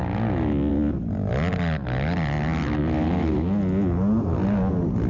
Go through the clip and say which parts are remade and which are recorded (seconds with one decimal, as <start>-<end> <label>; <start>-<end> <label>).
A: 0.0-5.1 recorded